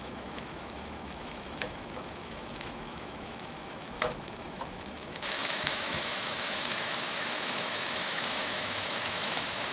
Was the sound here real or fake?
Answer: fake